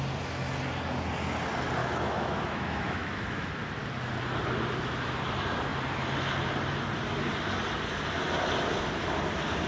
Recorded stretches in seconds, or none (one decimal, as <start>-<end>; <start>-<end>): 0.0-1.8; 3.5-9.7

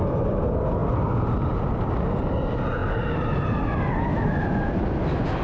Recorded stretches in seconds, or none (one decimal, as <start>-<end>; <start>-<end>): 0.0-5.4

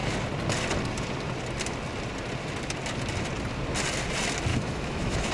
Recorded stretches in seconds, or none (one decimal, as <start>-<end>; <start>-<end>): 0.0-4.5

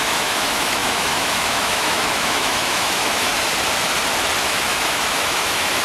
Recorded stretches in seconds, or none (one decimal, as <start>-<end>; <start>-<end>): 3.3-4.4

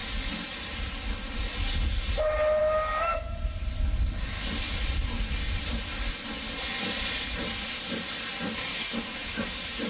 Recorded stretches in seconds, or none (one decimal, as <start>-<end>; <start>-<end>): 0.0-8.7; 9.4-9.9